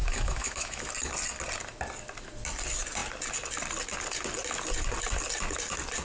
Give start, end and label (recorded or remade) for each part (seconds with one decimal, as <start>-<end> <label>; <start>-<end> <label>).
0.0-0.9 remade; 0.9-6.0 recorded

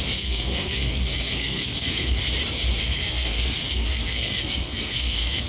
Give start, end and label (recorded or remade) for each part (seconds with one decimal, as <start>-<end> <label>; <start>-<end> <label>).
0.0-2.2 remade; 2.2-2.8 recorded; 2.8-5.5 remade